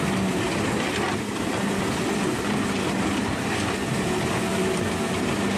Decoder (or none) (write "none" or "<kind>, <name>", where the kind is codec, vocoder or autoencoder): none